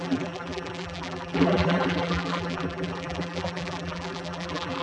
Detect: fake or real fake